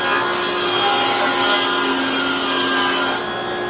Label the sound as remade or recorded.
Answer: recorded